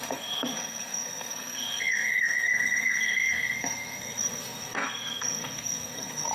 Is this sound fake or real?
fake